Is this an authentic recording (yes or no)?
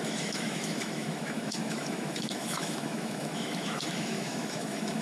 no